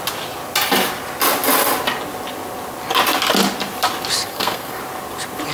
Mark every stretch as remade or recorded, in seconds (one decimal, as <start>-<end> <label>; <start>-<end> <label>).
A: 0.0-4.3 recorded; 4.3-4.8 remade; 4.8-5.5 recorded